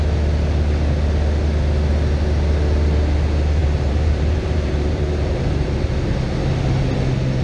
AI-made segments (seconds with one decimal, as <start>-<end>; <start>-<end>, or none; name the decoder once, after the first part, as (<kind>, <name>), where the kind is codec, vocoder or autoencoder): 3.6-6.4 (vocoder, BigVGAN v2)

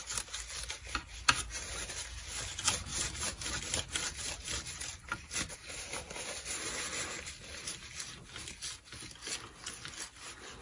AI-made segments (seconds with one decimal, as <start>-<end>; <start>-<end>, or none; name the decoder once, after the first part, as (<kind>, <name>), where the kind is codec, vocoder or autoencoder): none

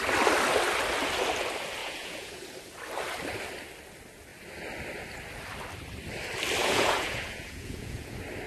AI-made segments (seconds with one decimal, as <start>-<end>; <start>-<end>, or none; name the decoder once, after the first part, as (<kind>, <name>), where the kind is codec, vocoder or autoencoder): 1.8-2.4 (vocoder, Vocos); 6.6-8.1